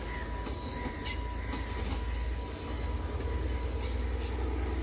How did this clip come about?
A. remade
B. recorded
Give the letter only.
B